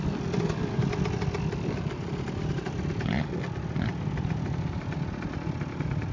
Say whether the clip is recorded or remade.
recorded